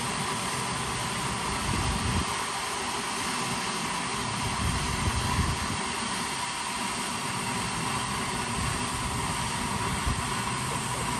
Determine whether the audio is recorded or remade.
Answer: recorded